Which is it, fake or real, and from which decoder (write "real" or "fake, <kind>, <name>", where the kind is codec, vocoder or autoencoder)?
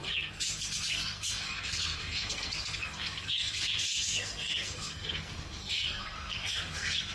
fake, codec, SNAC